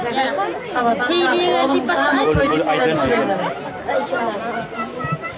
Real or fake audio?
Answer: real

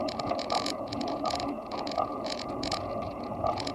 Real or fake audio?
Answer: fake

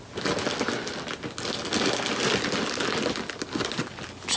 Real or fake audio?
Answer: real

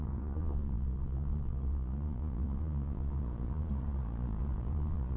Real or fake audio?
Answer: fake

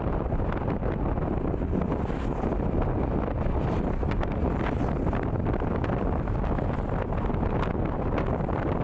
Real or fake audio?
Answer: real